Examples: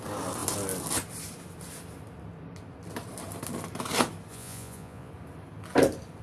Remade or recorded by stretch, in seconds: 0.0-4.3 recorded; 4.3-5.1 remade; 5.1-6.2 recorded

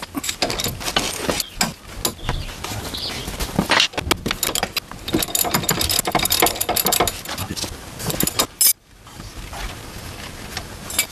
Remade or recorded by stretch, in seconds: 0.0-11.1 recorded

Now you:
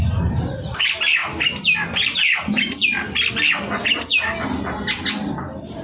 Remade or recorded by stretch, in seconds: 0.0-5.8 recorded

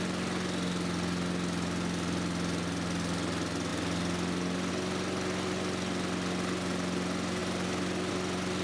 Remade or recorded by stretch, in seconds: 0.0-8.6 recorded

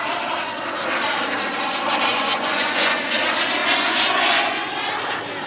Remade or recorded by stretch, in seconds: 0.0-2.1 recorded; 2.1-3.1 remade; 3.1-3.6 recorded; 3.6-4.7 remade; 4.7-5.5 recorded

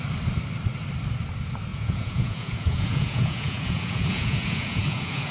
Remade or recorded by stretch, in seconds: 0.0-1.7 recorded; 1.7-5.3 remade